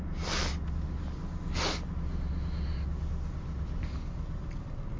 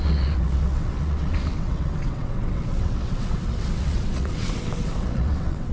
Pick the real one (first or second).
first